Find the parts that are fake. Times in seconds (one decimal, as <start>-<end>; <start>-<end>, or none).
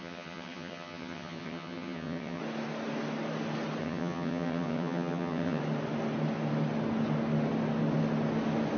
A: 0.0-2.4; 3.8-5.6